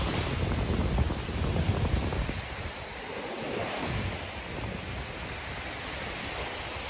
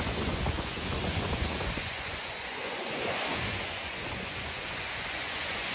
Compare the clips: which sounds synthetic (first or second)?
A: second